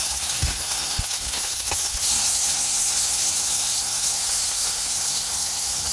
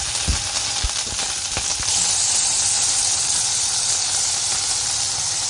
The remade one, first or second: first